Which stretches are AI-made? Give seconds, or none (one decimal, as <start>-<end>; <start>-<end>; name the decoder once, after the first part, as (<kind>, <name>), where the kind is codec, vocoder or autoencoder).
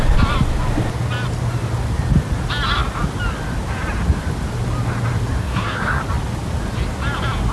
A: 5.4-6.0 (codec, SNAC)